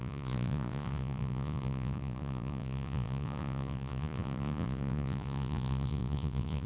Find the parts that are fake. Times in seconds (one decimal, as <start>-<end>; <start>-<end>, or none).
0.0-6.7